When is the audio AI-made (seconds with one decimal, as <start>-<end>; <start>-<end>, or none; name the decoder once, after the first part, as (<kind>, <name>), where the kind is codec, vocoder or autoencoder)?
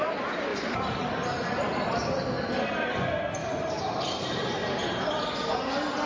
0.5-1.5 (vocoder, BigVGAN v2); 3.4-4.0; 4.6-5.2